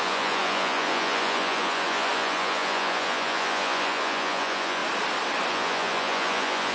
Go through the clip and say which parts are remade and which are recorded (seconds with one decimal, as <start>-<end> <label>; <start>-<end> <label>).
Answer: 0.0-4.8 remade; 4.8-5.5 recorded; 5.5-6.7 remade